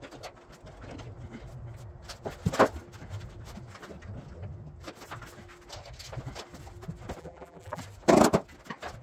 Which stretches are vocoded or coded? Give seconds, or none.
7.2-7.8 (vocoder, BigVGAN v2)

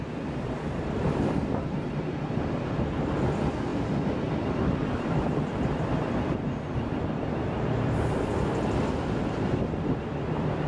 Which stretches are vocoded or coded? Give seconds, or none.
0.0-10.7 (vocoder, BigVGAN v2)

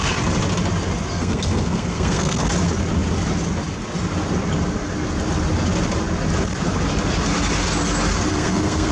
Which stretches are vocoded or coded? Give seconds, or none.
1.1-2.5 (codec, SNAC); 8.3-8.9